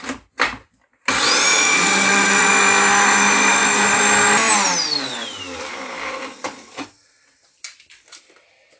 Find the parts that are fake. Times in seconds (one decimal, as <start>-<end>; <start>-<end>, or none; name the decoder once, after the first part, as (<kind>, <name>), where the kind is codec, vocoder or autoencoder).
1.5-2.5 (vocoder, Vocos)